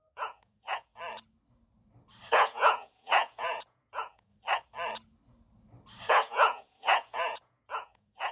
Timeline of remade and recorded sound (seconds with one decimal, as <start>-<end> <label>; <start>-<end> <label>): 0.0-0.9 remade; 0.9-2.3 recorded; 2.3-4.3 remade; 4.3-6.1 recorded; 6.1-8.3 remade